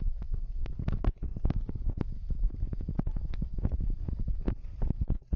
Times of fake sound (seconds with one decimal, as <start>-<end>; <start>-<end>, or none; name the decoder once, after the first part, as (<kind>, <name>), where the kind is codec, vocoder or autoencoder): none